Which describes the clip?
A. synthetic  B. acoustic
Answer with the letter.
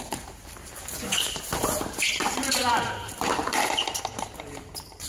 A